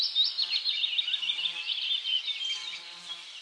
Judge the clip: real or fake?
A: real